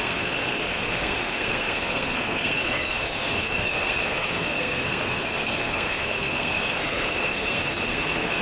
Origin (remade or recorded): remade